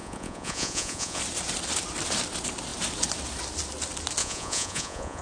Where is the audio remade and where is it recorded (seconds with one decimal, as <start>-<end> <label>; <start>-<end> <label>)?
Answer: 0.0-1.2 remade; 1.2-4.2 recorded; 4.2-5.2 remade